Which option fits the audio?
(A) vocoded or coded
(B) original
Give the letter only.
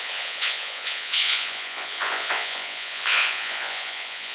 A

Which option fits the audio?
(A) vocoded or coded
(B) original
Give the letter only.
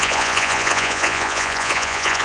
A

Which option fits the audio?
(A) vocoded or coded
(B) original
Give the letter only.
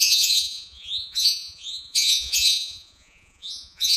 A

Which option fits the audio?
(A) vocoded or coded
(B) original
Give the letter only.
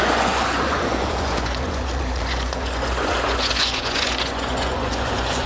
A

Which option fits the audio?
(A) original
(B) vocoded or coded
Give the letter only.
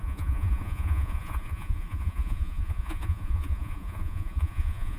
B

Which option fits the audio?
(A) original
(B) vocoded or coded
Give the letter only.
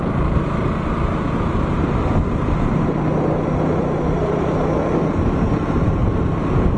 A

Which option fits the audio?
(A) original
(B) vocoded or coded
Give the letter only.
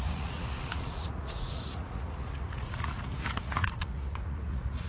B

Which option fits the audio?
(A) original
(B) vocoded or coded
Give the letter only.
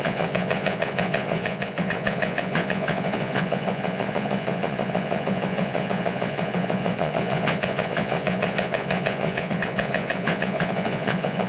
B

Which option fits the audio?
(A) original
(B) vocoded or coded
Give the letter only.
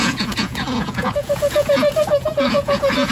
B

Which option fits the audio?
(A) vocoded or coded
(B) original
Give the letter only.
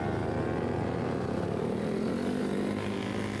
B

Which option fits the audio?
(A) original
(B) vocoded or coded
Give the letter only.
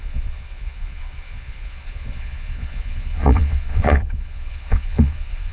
B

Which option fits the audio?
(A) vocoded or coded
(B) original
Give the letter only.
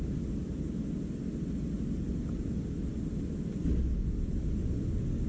B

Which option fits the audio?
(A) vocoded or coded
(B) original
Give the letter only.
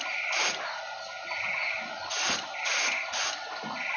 B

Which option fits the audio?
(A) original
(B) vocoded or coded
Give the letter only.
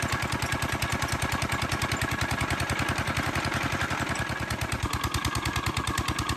A